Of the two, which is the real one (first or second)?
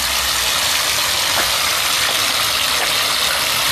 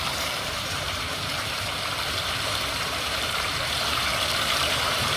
first